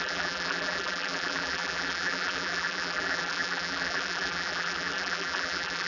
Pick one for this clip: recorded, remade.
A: remade